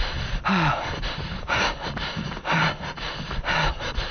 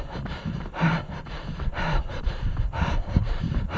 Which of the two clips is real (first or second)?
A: first